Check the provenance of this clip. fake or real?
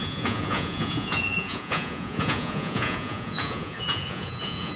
fake